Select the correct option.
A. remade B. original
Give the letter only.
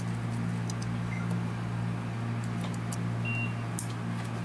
B